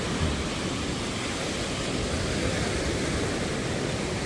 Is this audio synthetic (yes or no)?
no